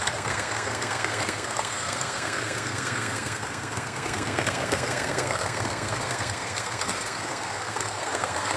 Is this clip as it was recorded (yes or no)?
no